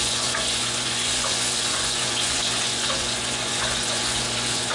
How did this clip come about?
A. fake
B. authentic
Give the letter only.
A